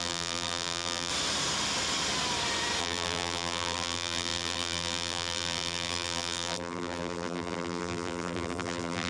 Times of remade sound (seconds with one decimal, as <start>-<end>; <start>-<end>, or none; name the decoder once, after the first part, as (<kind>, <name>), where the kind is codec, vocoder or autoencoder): 0.0-1.1 (vocoder, BigVGAN v2); 2.8-9.1